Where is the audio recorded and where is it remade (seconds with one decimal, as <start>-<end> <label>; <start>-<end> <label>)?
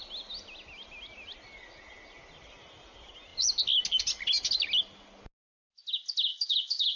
0.0-6.3 recorded; 6.3-7.0 remade